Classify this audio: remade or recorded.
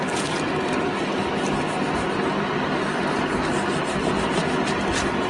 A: recorded